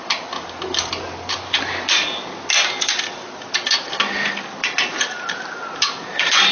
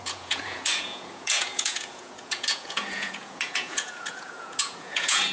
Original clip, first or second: first